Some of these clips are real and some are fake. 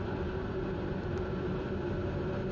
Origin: real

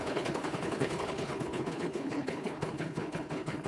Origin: fake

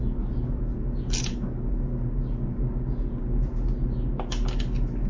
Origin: real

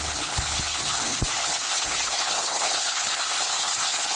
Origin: fake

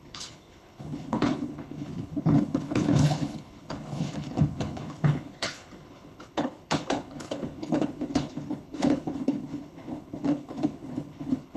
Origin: fake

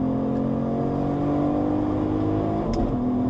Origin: real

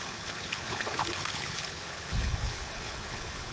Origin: fake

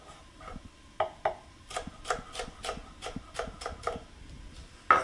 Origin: real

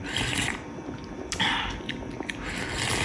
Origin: real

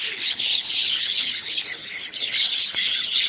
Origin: fake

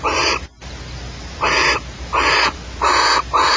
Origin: real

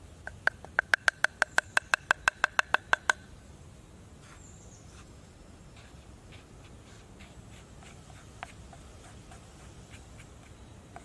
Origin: real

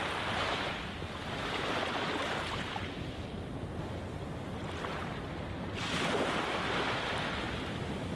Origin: real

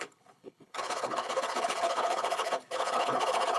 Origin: fake